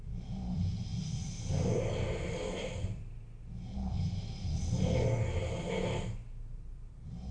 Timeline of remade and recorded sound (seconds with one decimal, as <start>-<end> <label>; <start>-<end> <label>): 0.0-7.3 recorded